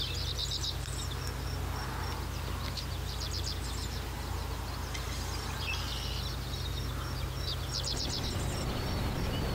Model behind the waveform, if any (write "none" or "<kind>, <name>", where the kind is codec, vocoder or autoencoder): none